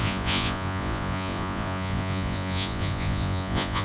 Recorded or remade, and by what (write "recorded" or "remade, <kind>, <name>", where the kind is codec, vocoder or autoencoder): remade, vocoder, Vocos